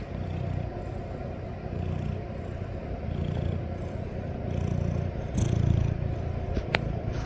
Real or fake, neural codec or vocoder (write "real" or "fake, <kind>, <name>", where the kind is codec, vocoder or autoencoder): real